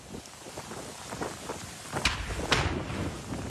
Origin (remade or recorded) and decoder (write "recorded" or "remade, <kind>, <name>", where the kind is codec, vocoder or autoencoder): recorded